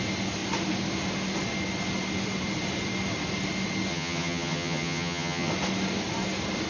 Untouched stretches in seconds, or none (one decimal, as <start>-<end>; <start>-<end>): 0.0-3.9; 5.5-6.7